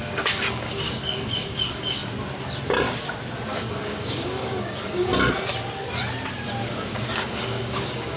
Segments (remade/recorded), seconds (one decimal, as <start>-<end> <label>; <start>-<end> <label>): 0.0-2.0 remade; 2.0-3.5 recorded; 3.5-5.1 remade; 5.1-6.7 recorded; 6.7-8.2 remade